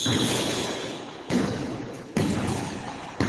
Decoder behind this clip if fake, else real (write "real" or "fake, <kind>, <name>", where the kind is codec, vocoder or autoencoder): fake, codec, HILCodec